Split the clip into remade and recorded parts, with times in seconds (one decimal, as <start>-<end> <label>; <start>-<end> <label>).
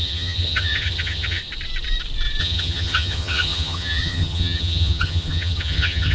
0.0-1.4 remade; 1.4-2.4 recorded; 2.4-6.1 remade